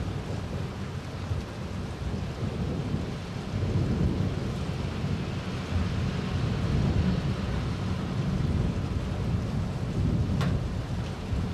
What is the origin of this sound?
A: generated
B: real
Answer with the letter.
B